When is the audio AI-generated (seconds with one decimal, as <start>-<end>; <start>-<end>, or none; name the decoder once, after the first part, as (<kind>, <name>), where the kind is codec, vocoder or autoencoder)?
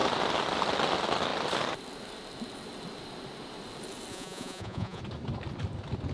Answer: 4.1-5.0 (vocoder, Vocos)